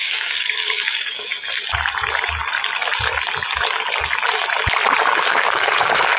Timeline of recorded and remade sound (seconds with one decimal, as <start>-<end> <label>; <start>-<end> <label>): 0.0-1.3 remade; 1.3-5.0 recorded; 5.0-6.2 remade